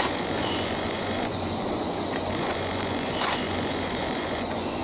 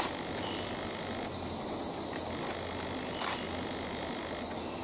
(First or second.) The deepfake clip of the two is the first